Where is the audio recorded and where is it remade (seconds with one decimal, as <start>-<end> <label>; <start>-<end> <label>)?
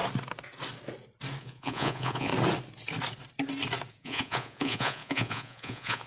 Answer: 0.0-1.4 recorded; 1.4-2.3 remade; 2.3-3.9 recorded; 3.9-6.1 remade